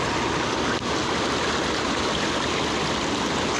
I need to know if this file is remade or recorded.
recorded